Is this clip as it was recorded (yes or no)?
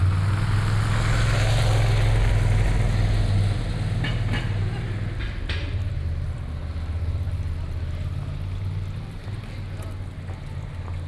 yes